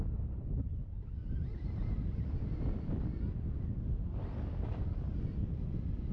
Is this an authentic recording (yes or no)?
yes